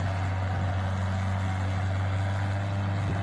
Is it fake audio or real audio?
real